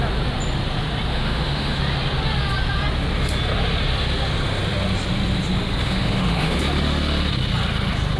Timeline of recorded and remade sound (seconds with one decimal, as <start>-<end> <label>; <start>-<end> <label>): 0.0-1.1 recorded; 1.1-1.8 remade; 1.8-5.8 recorded; 5.8-6.6 remade; 6.6-8.2 recorded